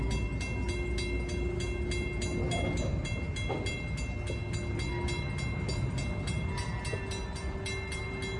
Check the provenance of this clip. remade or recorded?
recorded